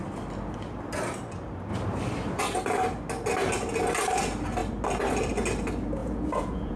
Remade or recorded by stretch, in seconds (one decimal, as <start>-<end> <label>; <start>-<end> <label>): 0.0-6.0 recorded; 6.0-6.8 remade